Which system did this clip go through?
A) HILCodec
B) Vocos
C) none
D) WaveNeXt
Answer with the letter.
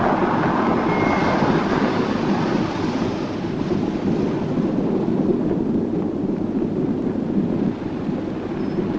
C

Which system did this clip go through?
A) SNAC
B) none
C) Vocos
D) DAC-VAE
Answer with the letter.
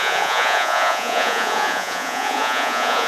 C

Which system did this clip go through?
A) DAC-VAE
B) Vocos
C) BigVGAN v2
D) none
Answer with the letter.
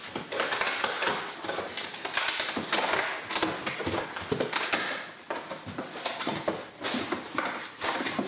D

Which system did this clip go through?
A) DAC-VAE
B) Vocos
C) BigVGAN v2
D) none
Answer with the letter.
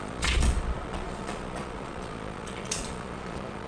B